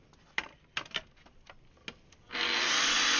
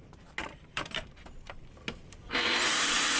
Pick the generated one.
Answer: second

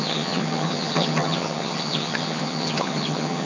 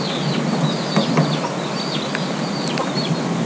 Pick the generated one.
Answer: first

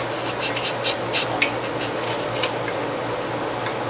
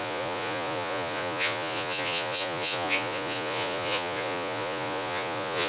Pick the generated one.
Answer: second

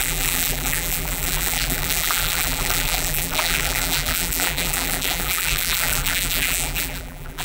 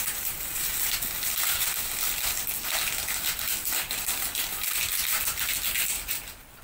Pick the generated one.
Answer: first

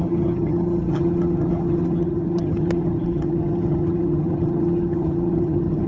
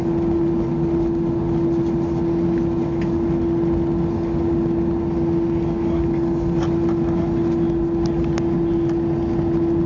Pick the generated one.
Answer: first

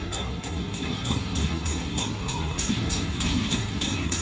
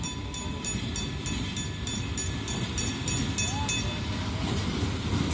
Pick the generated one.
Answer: first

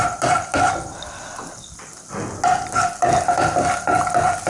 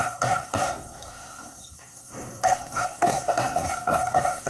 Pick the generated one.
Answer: second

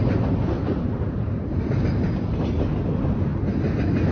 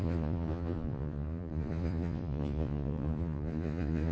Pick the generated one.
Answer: second